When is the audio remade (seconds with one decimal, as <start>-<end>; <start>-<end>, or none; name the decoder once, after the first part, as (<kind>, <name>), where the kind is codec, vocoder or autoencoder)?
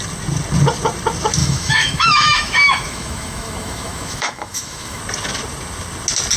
1.4-5.0 (autoencoder, DAC-VAE)